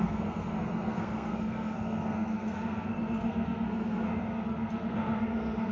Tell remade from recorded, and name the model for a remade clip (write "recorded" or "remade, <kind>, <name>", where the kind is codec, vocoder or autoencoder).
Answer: remade, codec, SNAC